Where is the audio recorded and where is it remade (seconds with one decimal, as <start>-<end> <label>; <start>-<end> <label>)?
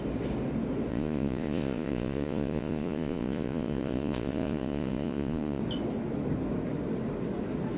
0.0-0.9 recorded; 0.9-5.6 remade; 5.6-7.8 recorded